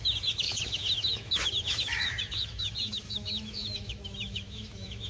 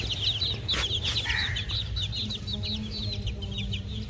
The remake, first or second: first